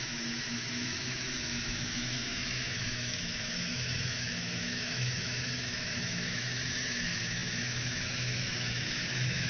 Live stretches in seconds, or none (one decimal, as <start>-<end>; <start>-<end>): none